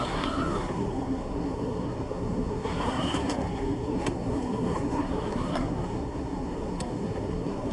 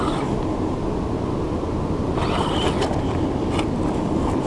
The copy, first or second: first